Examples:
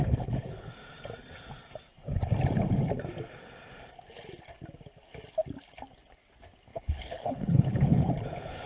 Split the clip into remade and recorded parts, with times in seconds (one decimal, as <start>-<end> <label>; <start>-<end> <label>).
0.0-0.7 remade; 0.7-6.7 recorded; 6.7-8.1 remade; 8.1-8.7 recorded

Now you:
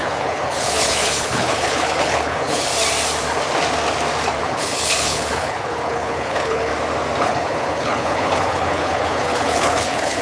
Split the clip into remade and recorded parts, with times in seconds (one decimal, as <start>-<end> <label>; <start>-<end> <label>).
0.0-2.7 remade; 2.7-4.4 recorded; 4.4-6.7 remade; 6.7-7.2 recorded; 7.2-10.2 remade

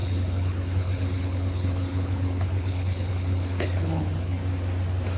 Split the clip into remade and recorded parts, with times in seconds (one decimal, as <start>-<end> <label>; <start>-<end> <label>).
0.0-4.4 remade; 4.4-5.2 recorded

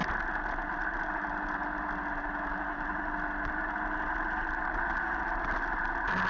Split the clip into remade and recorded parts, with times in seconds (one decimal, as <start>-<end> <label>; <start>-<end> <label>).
0.0-6.3 recorded

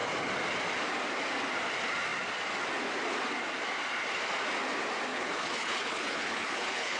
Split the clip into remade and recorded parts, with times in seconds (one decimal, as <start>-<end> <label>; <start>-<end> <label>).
0.0-5.1 recorded; 5.1-7.0 remade